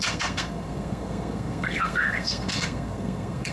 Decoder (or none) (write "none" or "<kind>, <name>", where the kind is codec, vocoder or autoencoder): codec, SNAC